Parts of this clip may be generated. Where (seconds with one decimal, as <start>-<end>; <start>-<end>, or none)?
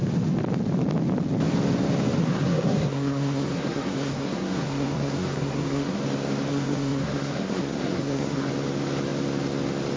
2.2-6.0; 6.5-8.5